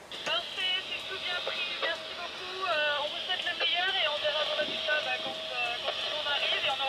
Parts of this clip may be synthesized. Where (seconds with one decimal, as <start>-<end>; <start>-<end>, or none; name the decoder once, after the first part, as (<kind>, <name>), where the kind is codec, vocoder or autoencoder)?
4.1-5.1 (vocoder, BigVGAN v2)